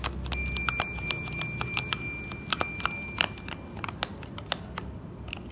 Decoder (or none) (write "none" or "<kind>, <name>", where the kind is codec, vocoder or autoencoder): none